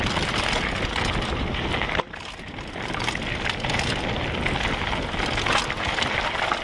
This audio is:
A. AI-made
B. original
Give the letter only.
B